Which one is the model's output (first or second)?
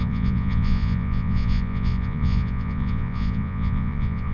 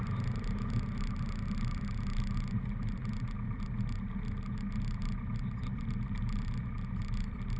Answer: first